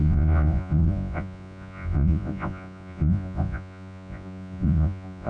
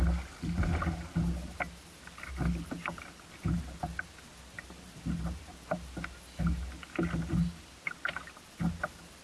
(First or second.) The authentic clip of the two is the second